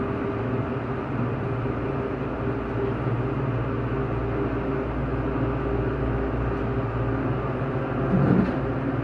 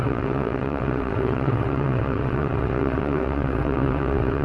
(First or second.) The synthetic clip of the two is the second